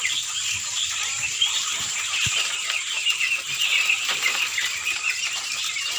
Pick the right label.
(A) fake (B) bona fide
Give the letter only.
B